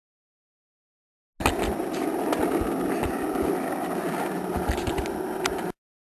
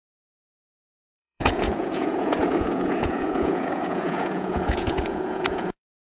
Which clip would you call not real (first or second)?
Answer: second